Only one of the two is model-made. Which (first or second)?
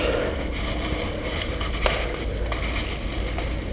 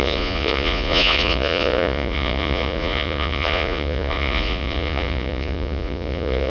second